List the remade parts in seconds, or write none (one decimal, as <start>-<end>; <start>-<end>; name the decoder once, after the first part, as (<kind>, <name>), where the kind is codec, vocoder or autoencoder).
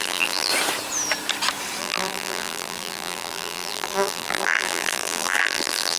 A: 0.0-0.5 (vocoder, BigVGAN v2); 1.8-6.0